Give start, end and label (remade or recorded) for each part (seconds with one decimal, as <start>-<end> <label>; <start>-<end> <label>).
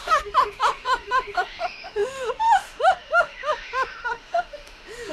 0.0-5.1 remade